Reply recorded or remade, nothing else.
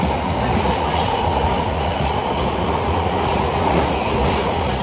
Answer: remade